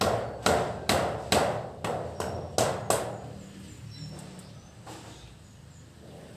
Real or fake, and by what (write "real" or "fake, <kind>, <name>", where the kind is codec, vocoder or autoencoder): real